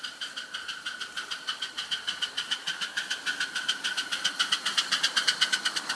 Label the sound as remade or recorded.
recorded